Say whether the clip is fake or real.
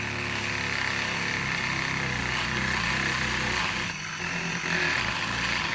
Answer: real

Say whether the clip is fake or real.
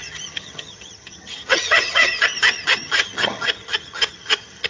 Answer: fake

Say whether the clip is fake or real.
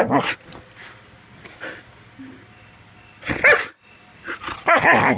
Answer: real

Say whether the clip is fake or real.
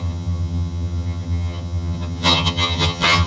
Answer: fake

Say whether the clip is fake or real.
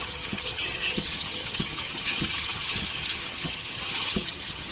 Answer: fake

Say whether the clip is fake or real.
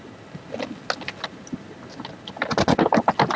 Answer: real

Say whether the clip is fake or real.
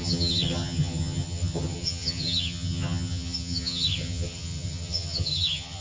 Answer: fake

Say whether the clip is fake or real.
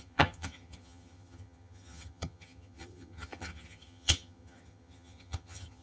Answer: fake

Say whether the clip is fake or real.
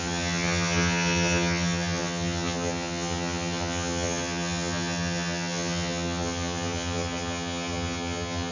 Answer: fake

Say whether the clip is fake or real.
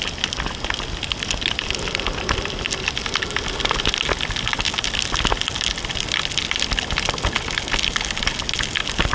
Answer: real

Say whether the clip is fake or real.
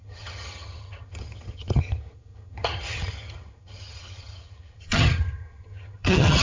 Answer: fake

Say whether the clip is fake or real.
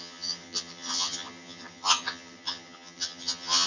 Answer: fake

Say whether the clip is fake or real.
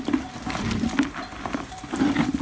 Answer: real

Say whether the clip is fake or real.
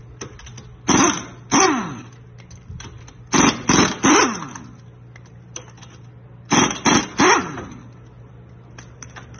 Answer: real